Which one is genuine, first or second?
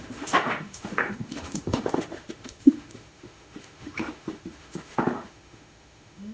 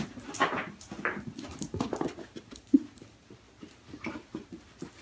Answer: second